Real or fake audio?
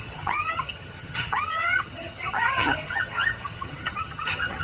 fake